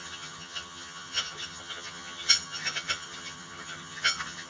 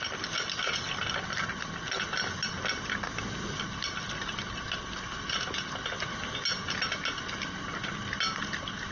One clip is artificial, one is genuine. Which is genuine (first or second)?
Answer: second